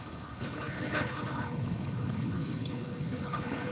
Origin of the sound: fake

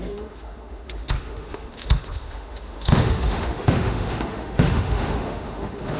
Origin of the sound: fake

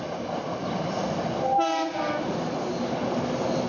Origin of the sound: real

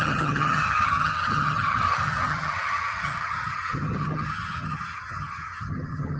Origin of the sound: fake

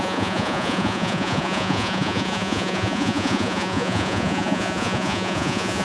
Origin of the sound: fake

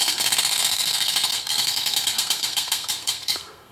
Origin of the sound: fake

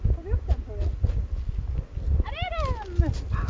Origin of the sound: real